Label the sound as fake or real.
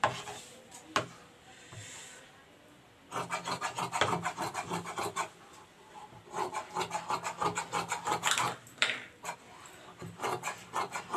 real